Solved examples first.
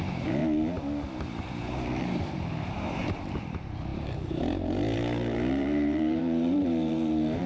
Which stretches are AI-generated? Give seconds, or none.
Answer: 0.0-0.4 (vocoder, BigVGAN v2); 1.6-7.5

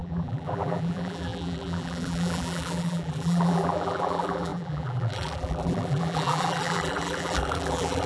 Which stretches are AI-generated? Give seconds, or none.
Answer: 0.0-8.1 (vocoder, BigVGAN v2)

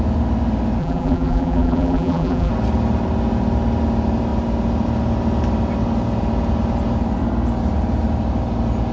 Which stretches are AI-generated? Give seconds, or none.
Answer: 0.8-2.5 (vocoder, BigVGAN v2)

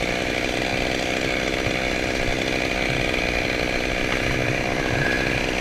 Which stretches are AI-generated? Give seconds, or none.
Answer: 4.4-5.6 (vocoder, BigVGAN v2)